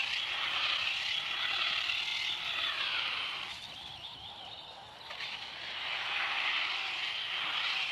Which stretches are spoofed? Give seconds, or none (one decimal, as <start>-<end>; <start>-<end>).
none